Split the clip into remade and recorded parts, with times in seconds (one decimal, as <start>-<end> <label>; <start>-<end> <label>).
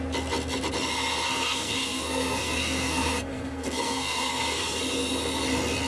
0.0-1.3 recorded; 1.3-4.8 remade; 4.8-5.9 recorded